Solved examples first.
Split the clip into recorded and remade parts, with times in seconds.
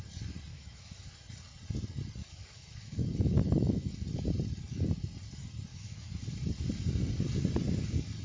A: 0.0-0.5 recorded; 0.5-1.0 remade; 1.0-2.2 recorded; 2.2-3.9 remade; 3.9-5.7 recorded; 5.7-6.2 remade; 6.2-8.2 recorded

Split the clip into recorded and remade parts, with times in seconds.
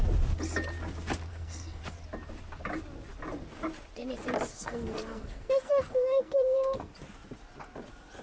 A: 0.0-1.3 recorded; 1.3-1.8 remade; 1.8-4.5 recorded; 4.5-6.9 remade; 6.9-8.2 recorded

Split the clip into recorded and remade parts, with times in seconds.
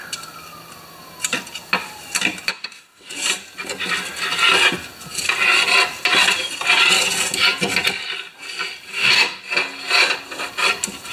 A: 0.0-2.5 recorded; 2.5-3.1 remade; 3.1-8.9 recorded; 8.9-9.4 remade; 9.4-11.1 recorded